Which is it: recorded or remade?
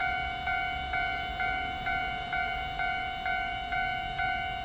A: remade